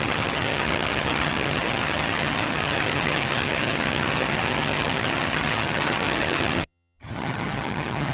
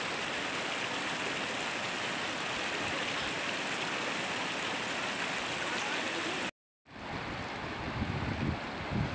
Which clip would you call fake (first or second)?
first